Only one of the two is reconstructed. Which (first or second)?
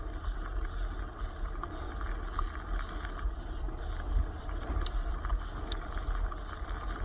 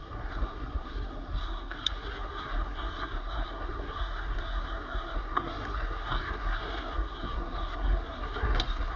second